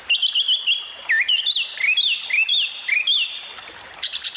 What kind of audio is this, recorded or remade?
recorded